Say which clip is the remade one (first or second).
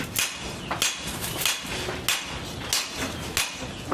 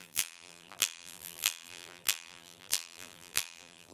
second